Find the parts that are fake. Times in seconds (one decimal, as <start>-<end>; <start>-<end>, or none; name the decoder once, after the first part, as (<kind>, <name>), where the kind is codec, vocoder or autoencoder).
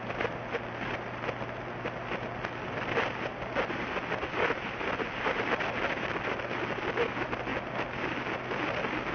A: none